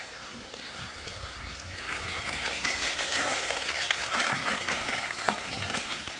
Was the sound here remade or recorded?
remade